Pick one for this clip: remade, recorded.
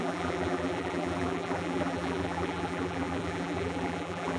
remade